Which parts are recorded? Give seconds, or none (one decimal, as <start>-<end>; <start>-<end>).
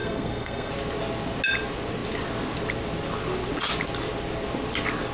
0.7-5.1